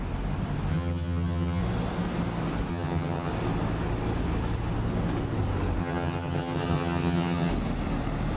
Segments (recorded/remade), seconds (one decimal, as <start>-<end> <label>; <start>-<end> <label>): 0.0-0.7 recorded; 0.7-1.6 remade; 1.6-2.7 recorded; 2.7-3.3 remade; 3.3-5.8 recorded; 5.8-7.5 remade; 7.5-8.4 recorded